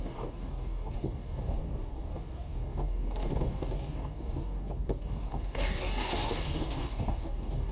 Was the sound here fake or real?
fake